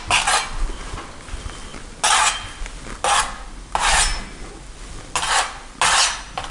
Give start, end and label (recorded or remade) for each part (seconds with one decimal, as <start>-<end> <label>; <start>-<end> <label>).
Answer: 0.0-6.5 recorded